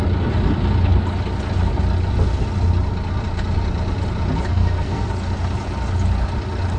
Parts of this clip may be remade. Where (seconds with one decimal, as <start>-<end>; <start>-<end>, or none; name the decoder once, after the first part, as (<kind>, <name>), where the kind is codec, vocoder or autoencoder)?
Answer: 4.5-5.1 (codec, SNAC)